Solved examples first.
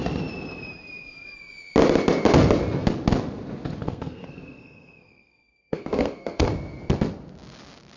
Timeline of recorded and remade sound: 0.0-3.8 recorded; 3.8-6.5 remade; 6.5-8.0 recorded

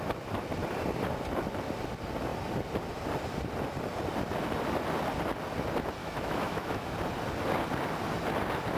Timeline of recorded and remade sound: 0.0-6.0 recorded; 6.0-6.9 remade; 6.9-8.8 recorded